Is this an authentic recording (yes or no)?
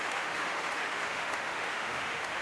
no